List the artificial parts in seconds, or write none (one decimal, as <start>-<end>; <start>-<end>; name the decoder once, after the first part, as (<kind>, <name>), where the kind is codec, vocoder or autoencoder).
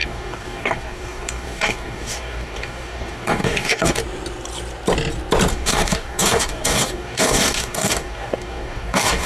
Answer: 0.0-4.0 (codec, DAC); 5.5-9.3